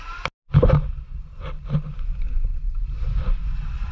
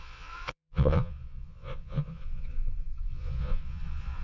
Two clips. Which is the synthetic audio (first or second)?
second